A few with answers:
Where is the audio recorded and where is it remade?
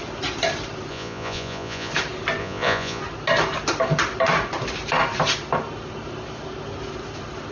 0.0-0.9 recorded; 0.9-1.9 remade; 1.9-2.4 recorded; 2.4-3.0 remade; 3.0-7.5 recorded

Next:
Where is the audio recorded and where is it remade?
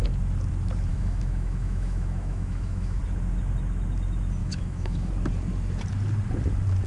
0.0-0.9 recorded; 0.9-3.0 remade; 3.0-4.4 recorded; 4.4-5.1 remade; 5.1-6.9 recorded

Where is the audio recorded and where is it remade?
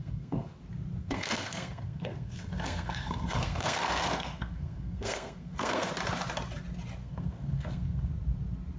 0.0-0.6 remade; 0.6-1.0 recorded; 1.0-5.9 remade; 5.9-7.0 recorded; 7.0-8.1 remade; 8.1-8.8 recorded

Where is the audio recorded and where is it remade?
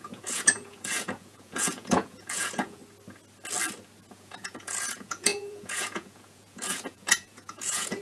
0.0-2.8 remade; 2.8-4.1 recorded; 4.1-8.0 remade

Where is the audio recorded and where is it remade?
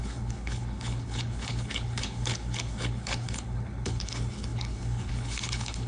0.0-5.9 remade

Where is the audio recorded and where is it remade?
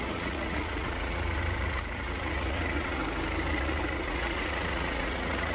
0.0-3.0 remade; 3.0-3.5 recorded; 3.5-5.5 remade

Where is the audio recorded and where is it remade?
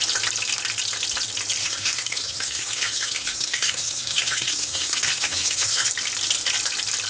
0.0-1.6 recorded; 1.6-5.9 remade; 5.9-7.1 recorded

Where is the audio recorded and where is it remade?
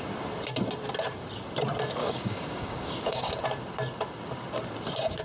0.0-2.0 recorded; 2.0-3.3 remade; 3.3-5.2 recorded